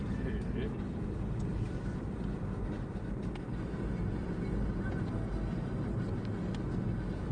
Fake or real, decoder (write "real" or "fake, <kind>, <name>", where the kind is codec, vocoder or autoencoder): real